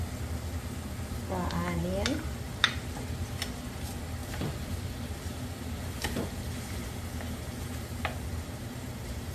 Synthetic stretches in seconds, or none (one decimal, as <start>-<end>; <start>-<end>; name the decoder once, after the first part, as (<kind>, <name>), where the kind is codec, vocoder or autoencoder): 4.2-9.3 (vocoder, BigVGAN v2)